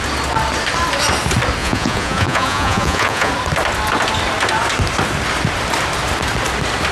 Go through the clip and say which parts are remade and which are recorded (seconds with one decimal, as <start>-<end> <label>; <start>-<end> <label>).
0.0-1.6 recorded; 1.6-3.3 remade; 3.3-6.9 recorded